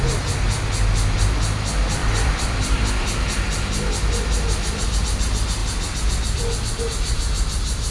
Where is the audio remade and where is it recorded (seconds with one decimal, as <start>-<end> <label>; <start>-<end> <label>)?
0.0-2.0 recorded; 2.0-2.9 remade; 2.9-5.6 recorded; 5.6-6.8 remade; 6.8-7.9 recorded